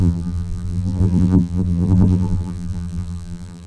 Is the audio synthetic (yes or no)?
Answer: yes